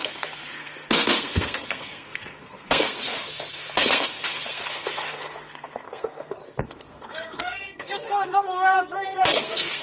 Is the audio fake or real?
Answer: fake